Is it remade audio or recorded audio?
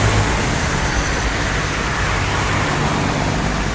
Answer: recorded